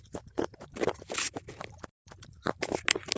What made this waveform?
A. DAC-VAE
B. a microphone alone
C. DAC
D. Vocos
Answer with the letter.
B